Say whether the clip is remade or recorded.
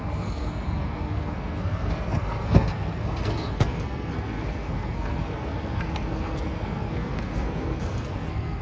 remade